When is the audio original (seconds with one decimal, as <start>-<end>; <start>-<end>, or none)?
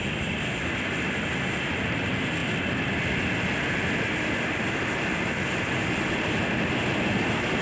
0.0-7.6